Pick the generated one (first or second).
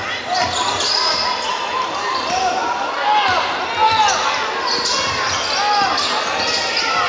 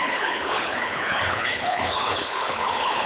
second